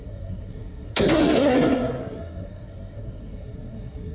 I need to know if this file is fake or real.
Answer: fake